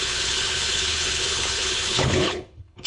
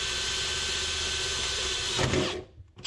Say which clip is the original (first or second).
second